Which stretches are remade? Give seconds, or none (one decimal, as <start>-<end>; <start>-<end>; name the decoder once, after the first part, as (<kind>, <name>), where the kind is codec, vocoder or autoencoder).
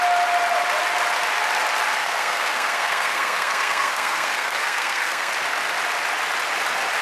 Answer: 2.0-5.3 (codec, SNAC)